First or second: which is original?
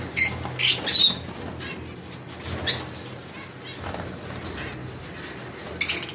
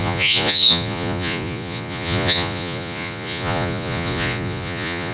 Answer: first